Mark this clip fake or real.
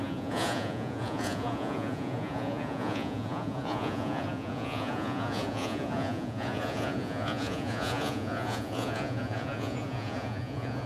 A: fake